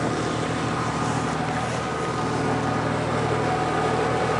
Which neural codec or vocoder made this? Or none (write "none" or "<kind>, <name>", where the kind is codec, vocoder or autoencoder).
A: none